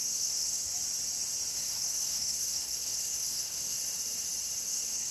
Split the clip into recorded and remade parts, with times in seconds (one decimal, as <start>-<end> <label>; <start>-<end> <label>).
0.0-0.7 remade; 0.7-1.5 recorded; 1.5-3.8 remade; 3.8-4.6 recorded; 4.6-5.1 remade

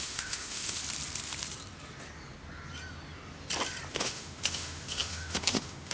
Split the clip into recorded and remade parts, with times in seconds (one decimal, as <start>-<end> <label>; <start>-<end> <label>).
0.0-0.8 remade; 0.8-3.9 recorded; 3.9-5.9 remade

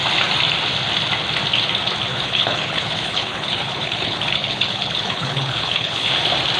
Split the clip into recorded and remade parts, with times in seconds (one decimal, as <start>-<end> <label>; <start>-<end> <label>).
0.0-2.1 recorded; 2.1-6.1 remade; 6.1-6.6 recorded

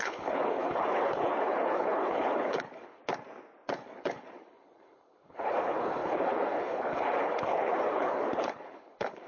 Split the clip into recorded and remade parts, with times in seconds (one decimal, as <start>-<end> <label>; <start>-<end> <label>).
0.0-3.0 remade; 3.0-3.7 recorded; 3.7-9.3 remade

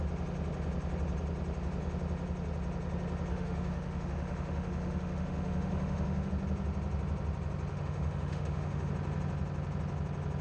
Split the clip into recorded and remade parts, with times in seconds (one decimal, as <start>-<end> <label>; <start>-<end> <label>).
0.0-3.3 recorded; 3.3-6.3 remade; 6.3-7.7 recorded; 7.7-8.9 remade; 8.9-10.4 recorded